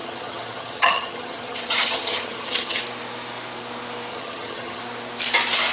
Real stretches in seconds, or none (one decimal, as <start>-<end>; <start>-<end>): 2.8-4.1; 4.8-5.7